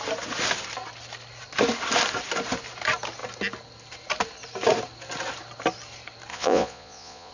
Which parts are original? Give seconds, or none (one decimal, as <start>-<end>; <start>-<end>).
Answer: 0.0-6.3